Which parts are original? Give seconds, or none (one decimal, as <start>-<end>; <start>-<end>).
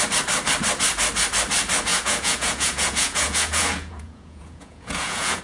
0.0-1.9